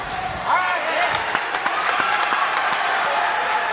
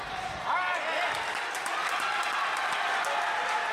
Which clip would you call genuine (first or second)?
second